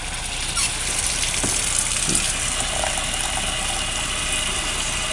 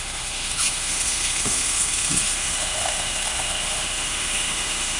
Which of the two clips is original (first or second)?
first